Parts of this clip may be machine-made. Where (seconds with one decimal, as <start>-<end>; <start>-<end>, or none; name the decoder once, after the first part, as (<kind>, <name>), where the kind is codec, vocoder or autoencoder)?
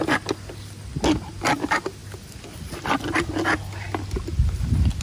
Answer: none